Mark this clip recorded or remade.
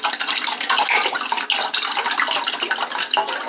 recorded